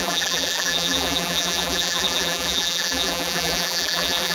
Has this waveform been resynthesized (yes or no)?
yes